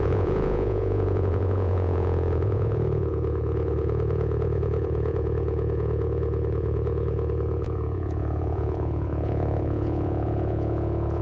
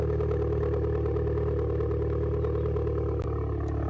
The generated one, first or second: first